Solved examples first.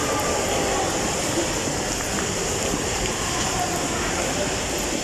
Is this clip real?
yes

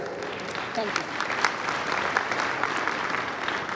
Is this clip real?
no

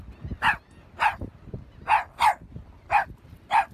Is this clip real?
no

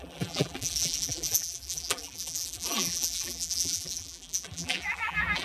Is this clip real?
no